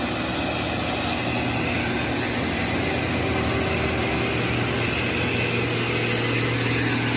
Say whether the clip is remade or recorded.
recorded